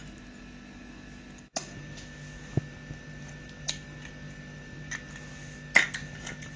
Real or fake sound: real